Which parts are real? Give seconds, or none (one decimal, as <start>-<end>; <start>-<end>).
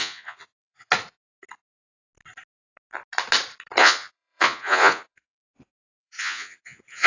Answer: 0.9-3.8